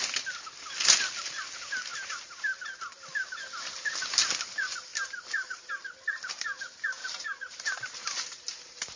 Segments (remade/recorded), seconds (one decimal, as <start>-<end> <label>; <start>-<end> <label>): 0.0-1.9 recorded; 1.9-2.7 remade; 2.7-4.9 recorded; 4.9-5.7 remade; 5.7-7.0 recorded; 7.0-8.5 remade; 8.5-9.0 recorded